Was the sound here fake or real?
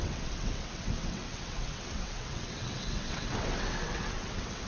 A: fake